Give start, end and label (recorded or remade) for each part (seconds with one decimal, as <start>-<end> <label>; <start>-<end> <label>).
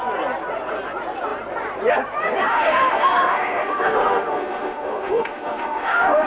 0.0-2.5 recorded; 2.5-6.3 remade